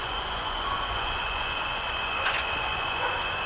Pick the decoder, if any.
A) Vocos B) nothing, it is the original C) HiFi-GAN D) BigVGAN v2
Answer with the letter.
A